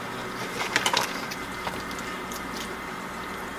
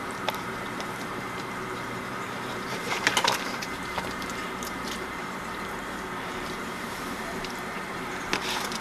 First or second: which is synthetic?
second